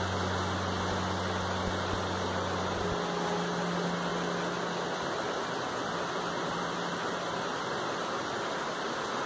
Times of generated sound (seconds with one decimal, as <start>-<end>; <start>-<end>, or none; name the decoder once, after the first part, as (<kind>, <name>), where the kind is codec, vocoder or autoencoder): none